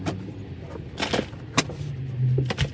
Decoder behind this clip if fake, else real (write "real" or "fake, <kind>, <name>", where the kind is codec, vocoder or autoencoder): real